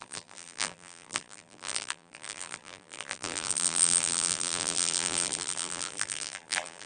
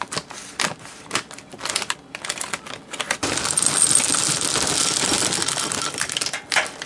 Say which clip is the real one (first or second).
second